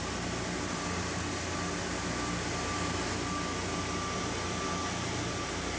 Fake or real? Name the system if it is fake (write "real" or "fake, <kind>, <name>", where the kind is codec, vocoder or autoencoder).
real